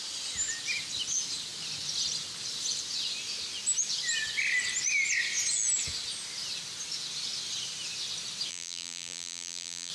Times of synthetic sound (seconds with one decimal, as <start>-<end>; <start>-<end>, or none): 8.5-9.9